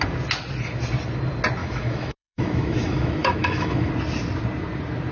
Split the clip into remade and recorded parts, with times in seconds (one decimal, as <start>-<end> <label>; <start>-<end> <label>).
0.0-1.6 recorded; 1.6-3.9 remade; 3.9-5.1 recorded